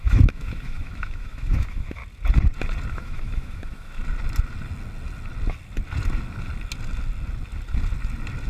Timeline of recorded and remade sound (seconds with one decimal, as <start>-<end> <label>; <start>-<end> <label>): 0.0-2.0 remade; 2.0-2.9 recorded; 2.9-4.0 remade; 4.0-8.5 recorded